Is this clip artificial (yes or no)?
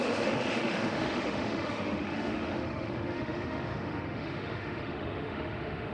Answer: yes